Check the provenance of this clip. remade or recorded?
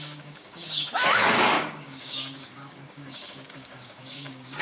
remade